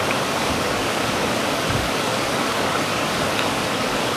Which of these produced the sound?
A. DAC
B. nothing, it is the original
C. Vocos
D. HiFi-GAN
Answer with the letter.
A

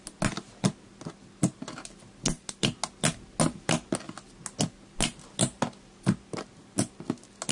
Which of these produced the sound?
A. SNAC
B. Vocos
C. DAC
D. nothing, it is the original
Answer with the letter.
D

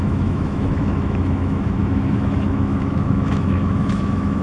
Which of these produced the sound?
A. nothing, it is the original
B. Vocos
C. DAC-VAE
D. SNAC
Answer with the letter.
C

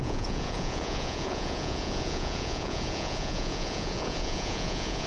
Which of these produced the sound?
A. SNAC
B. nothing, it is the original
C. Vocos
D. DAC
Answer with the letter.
C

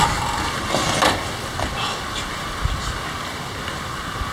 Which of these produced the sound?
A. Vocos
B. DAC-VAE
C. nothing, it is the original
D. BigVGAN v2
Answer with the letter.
C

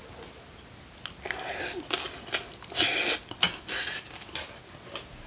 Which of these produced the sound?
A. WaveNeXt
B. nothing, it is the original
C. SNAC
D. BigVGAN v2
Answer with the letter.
B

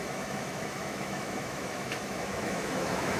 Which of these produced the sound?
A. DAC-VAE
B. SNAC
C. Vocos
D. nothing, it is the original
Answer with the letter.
A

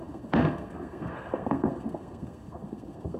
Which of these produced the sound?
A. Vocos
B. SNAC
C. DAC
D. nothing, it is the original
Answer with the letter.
B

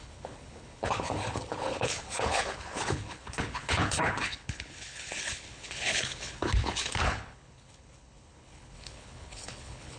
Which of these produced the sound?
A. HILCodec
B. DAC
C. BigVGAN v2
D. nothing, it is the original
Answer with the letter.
A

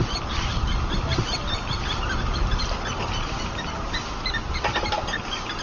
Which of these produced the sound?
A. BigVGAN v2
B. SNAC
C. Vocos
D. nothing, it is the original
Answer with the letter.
D